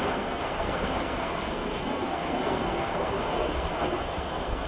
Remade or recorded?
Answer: remade